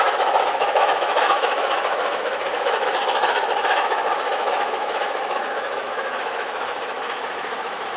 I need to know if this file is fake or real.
fake